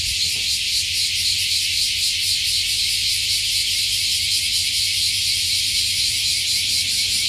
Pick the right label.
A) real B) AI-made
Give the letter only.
A